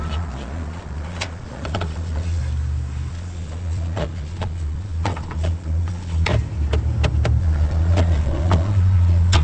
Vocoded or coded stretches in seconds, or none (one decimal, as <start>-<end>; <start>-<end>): 0.0-2.4; 3.1-6.3; 7.4-9.4